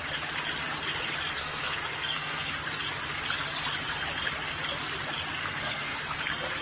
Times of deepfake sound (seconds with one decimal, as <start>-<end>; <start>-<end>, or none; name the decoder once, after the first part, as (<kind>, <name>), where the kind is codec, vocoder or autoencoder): 1.4-2.5 (codec, SNAC); 5.4-6.0